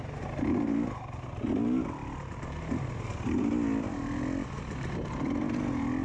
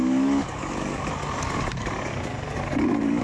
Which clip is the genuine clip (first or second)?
first